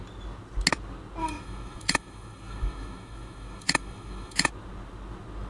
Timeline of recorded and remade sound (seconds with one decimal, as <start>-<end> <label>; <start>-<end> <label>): 0.0-1.2 recorded; 1.2-4.5 remade; 4.5-5.5 recorded